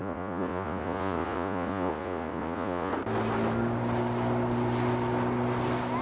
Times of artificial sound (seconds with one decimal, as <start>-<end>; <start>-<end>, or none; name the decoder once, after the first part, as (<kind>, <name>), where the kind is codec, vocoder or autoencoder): 0.0-2.9 (vocoder, Vocos)